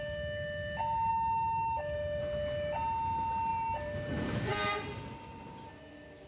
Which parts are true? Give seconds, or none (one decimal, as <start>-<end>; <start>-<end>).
0.0-1.1; 2.2-6.3